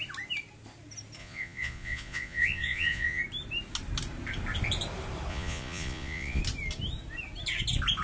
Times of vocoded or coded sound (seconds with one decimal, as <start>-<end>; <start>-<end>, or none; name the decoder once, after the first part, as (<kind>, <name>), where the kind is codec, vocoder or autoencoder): 1.2-3.2 (vocoder, Vocos); 5.3-6.4